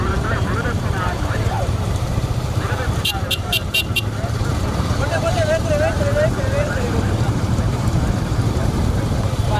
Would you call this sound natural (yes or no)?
no